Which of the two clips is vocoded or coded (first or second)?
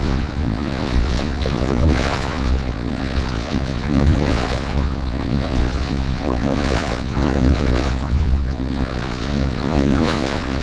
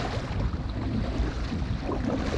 first